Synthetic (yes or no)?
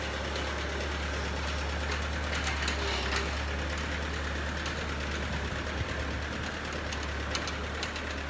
no